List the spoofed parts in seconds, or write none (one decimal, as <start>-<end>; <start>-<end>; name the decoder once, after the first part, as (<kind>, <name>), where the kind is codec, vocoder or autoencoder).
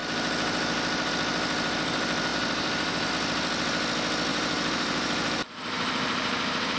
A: 2.3-3.1 (vocoder, BigVGAN v2); 4.3-6.8